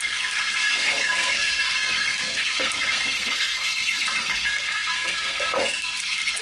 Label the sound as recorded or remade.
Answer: remade